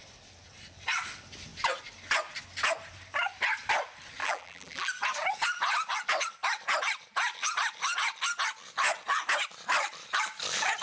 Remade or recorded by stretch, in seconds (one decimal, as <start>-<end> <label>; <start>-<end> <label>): 0.0-4.2 recorded; 4.2-4.9 remade; 4.9-10.8 recorded